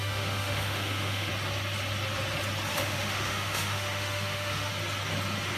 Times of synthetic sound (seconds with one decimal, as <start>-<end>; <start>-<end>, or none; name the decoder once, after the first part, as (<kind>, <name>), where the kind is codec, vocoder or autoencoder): 0.0-1.3 (autoencoder, DAC-VAE); 2.7-4.7